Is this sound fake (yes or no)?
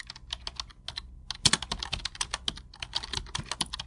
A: no